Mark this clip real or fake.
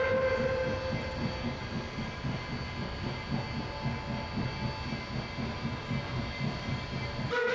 real